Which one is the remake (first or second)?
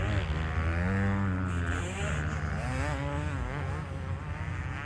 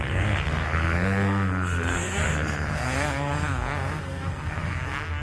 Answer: second